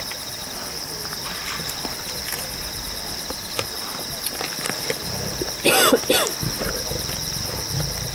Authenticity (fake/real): real